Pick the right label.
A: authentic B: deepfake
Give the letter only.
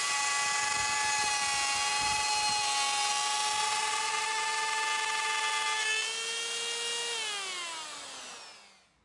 A